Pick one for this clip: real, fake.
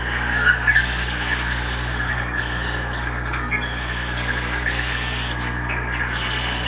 fake